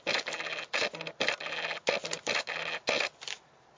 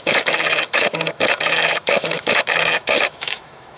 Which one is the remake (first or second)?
second